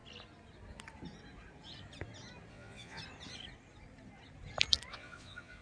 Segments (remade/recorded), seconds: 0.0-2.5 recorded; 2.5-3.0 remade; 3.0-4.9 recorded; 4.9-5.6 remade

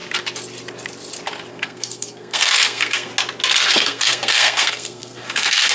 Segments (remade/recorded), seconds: 0.0-1.5 recorded; 1.5-3.1 remade; 3.1-3.7 recorded; 3.7-5.7 remade

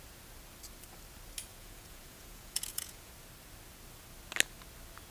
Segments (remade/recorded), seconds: 0.0-1.5 recorded; 1.5-3.1 remade; 3.1-5.1 recorded

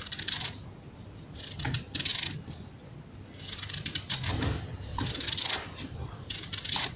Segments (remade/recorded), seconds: 0.0-2.1 remade; 2.1-3.2 recorded; 3.2-7.0 remade

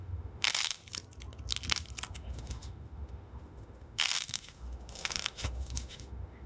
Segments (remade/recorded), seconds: 0.0-0.8 remade; 0.8-2.1 recorded; 2.1-6.5 remade